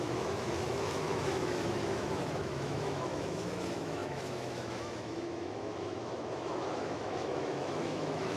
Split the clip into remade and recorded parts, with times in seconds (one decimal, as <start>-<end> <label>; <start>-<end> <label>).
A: 0.0-8.4 remade